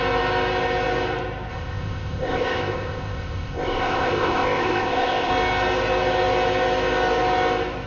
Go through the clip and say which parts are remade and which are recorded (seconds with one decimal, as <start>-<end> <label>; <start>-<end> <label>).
0.0-1.5 recorded; 1.5-5.3 remade; 5.3-7.9 recorded